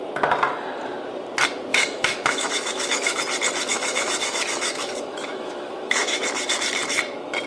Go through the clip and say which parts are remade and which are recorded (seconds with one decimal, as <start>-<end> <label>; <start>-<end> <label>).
0.0-1.7 recorded; 1.7-3.2 remade; 3.2-3.7 recorded; 3.7-6.2 remade; 6.2-7.5 recorded